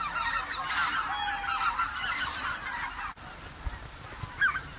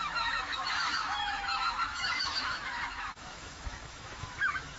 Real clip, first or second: first